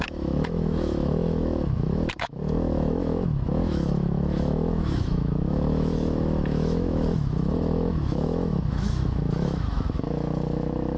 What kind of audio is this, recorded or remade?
remade